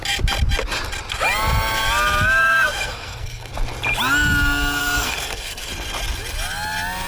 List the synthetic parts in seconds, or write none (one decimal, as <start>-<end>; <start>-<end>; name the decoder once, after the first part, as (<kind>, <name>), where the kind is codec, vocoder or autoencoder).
2.4-3.5 (codec, SNAC); 4.8-5.7